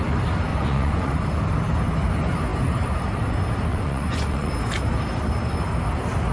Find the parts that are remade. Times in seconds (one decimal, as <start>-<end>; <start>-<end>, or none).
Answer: 0.5-1.1; 3.7-4.5